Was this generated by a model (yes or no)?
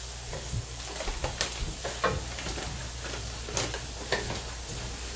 no